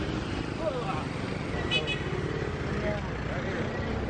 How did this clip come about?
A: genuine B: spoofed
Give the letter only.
A